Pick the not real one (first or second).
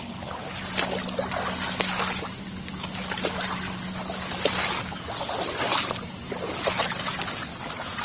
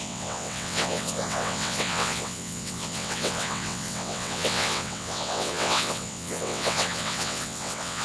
second